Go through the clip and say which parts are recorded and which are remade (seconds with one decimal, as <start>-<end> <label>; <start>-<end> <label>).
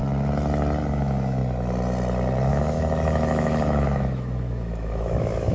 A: 0.0-0.9 recorded; 0.9-1.4 remade; 1.4-2.5 recorded; 2.5-5.5 remade